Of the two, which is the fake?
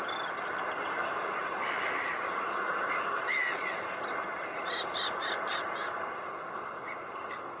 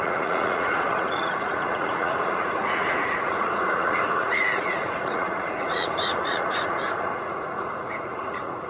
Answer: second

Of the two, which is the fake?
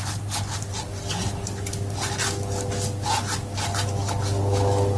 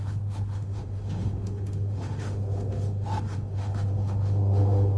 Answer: second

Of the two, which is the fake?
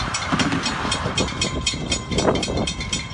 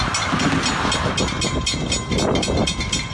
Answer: first